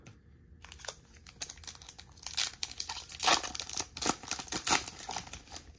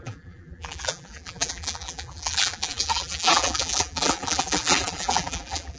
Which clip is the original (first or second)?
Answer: first